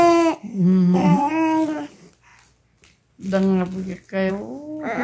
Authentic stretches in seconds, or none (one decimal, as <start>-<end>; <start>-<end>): 0.0-0.5; 1.3-5.0